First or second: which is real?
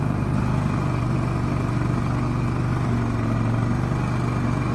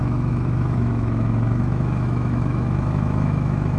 first